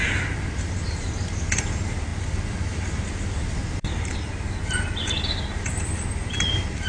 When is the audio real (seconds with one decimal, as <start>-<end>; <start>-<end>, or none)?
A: 0.0-6.9